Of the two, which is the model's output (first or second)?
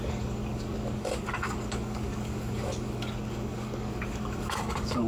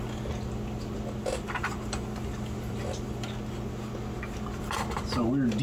first